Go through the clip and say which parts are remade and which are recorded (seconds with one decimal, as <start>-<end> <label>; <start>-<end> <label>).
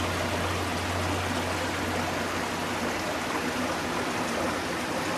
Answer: 0.0-5.2 recorded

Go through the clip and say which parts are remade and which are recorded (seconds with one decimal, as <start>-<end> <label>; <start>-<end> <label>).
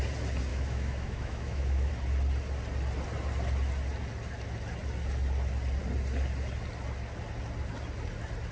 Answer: 0.0-0.5 recorded; 0.5-1.9 remade; 1.9-8.5 recorded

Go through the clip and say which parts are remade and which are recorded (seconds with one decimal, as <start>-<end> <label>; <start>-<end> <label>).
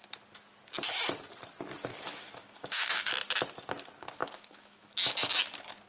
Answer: 0.0-1.9 recorded; 1.9-3.1 remade; 3.1-4.2 recorded; 4.2-4.9 remade; 4.9-5.9 recorded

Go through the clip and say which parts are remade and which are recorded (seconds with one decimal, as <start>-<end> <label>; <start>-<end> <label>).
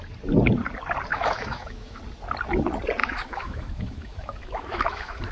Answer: 0.0-1.1 recorded; 1.1-2.0 remade; 2.0-3.0 recorded; 3.0-5.3 remade